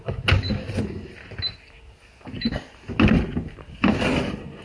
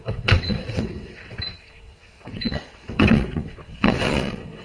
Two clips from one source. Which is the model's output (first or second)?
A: second